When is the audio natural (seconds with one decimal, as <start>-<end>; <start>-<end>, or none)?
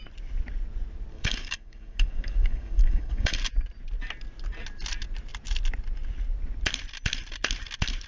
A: 0.0-1.1; 3.4-8.1